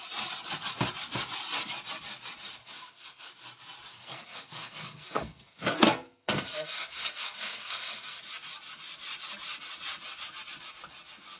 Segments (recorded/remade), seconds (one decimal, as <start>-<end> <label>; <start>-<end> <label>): 0.0-2.6 recorded; 2.6-3.3 remade; 3.3-3.9 recorded; 3.9-8.2 remade; 8.2-11.4 recorded